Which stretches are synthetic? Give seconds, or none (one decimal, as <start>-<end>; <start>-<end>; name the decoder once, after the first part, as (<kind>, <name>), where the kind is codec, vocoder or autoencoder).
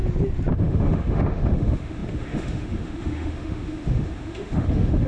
0.5-5.1 (autoencoder, DAC-VAE)